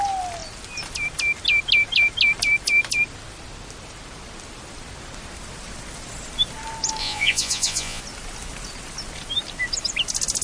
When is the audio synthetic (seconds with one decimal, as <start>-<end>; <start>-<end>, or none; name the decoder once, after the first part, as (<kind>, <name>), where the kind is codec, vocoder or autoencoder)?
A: 7.0-8.0 (vocoder, Vocos)